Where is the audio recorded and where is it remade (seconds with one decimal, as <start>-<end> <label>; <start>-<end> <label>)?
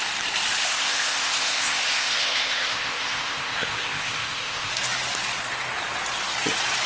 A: 0.0-0.6 recorded; 0.6-4.7 remade; 4.7-6.9 recorded